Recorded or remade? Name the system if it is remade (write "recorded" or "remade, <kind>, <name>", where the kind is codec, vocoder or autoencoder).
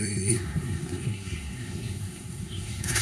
remade, codec, SNAC